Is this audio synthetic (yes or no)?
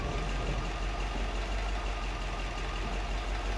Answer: no